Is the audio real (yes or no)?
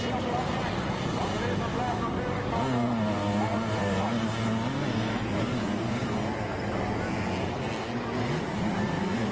yes